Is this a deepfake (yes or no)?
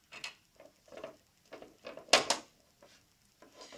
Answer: no